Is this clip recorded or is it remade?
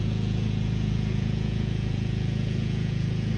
remade